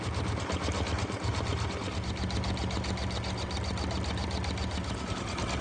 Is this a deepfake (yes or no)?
no